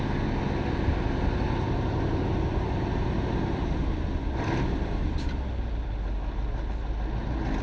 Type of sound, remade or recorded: recorded